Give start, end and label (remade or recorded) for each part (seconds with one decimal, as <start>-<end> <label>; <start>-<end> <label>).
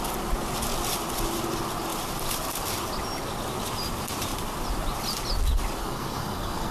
0.0-5.8 recorded; 5.8-6.7 remade